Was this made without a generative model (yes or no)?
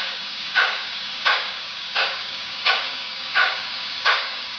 no